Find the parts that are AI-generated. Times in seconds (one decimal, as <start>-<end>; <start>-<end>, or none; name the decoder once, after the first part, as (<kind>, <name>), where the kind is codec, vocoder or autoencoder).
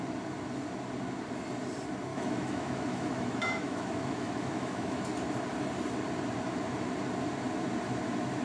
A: 2.1-5.0 (autoencoder, DAC-VAE)